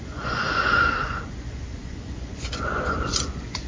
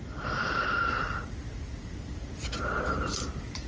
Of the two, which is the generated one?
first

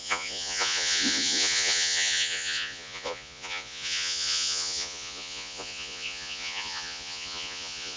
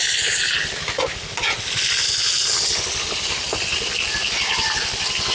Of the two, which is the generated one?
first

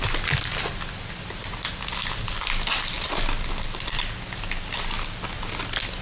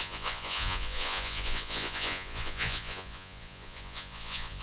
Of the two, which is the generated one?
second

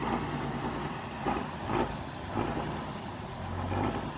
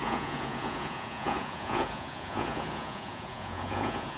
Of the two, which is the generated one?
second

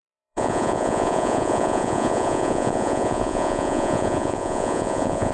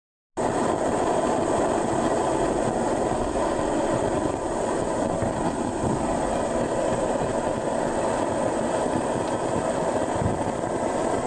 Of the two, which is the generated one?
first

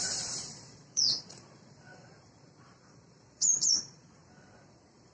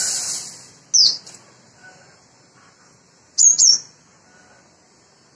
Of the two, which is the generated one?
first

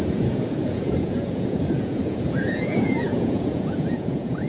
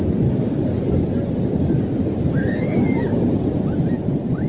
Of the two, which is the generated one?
first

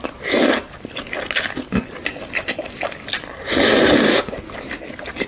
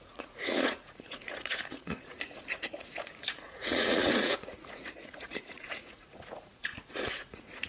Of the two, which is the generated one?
second